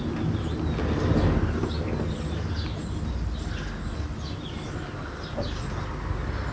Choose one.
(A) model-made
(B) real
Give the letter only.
B